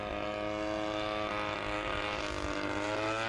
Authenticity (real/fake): real